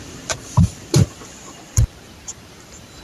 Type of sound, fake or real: fake